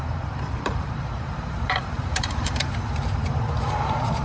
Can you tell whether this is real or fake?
fake